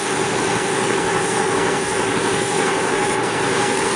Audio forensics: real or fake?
fake